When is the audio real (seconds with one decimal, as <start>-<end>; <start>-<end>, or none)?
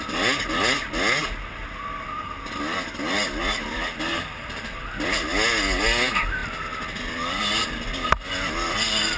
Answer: 0.0-3.4; 5.3-9.2